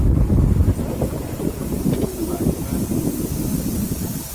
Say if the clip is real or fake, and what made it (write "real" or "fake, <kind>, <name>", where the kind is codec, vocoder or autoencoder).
real